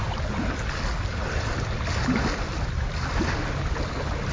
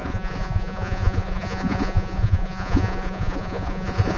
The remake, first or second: second